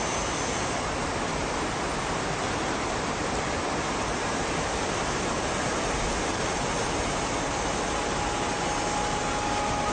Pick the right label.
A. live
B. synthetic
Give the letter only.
A